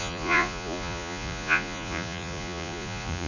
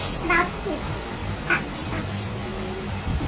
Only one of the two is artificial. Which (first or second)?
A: first